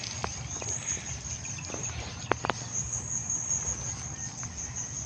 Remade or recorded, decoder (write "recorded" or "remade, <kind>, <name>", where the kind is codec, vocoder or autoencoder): recorded